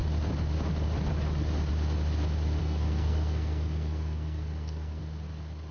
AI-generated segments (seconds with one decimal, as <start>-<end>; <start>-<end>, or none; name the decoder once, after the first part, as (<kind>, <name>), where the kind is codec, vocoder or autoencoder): 2.6-5.0 (codec, SNAC)